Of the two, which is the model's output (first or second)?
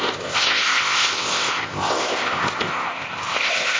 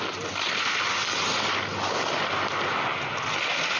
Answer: first